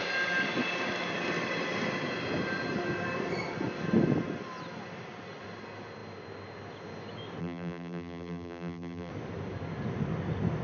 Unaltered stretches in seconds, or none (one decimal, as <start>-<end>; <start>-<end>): 0.0-7.4; 9.1-10.6